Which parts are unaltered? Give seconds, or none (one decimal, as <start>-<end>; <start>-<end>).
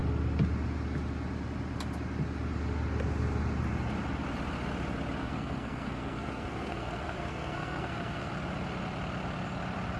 0.0-5.2; 8.3-10.0